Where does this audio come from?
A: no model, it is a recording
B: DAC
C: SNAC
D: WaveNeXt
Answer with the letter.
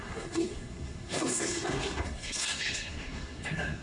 C